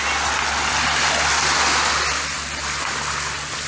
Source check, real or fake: real